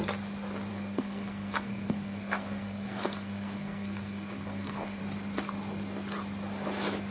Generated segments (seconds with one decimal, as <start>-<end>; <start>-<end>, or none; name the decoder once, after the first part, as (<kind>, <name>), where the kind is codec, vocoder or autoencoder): 0.7-5.0 (codec, SNAC)